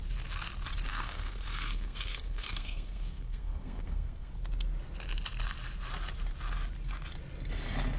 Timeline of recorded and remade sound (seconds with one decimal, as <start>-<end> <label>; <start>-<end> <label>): 0.0-0.9 recorded; 0.9-4.3 remade; 4.3-8.0 recorded

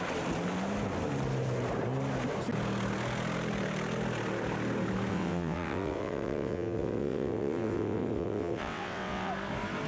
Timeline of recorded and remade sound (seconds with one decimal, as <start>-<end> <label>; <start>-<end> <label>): 0.0-5.1 recorded; 5.1-9.3 remade; 9.3-9.9 recorded